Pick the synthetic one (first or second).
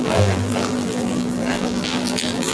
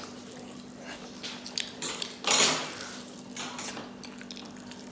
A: first